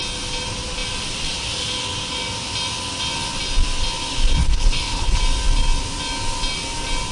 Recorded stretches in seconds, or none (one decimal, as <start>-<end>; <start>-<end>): 0.0-4.4; 5.2-7.1